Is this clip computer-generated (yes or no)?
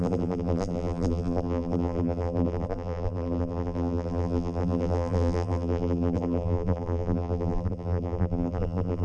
yes